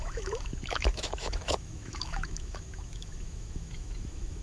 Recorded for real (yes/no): no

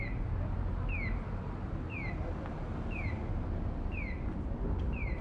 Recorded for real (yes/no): yes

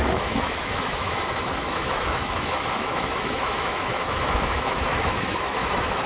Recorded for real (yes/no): no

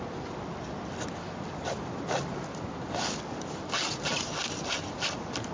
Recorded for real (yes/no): yes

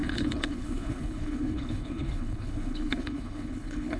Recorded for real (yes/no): no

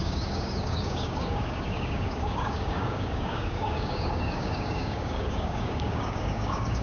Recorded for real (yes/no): no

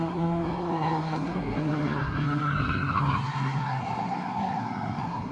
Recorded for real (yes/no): no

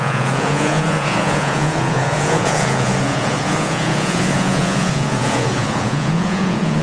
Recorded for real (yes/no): no